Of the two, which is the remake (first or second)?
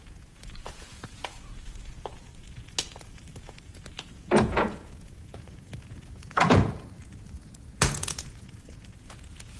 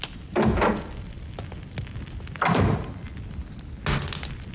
first